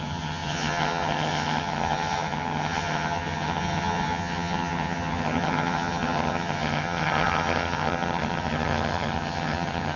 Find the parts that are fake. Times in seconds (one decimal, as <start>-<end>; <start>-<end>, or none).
0.0-10.0